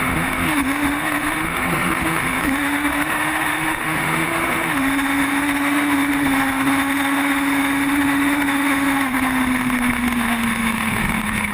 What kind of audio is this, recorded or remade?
remade